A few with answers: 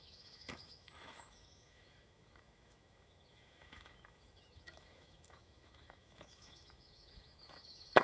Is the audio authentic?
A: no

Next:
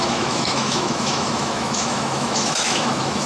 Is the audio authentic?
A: no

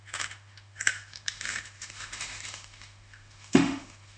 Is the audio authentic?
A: no